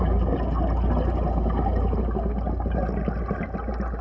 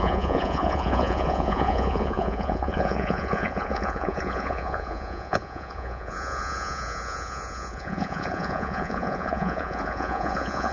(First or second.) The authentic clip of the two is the first